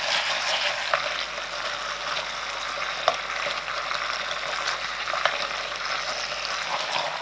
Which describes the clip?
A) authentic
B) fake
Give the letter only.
A